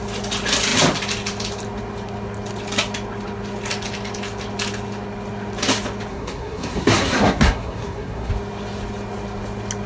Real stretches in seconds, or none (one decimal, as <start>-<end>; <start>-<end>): 0.0-6.1; 8.3-9.9